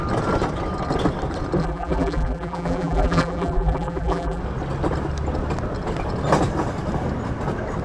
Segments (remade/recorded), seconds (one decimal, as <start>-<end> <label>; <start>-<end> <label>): 0.0-1.6 recorded; 1.6-4.4 remade; 4.4-7.8 recorded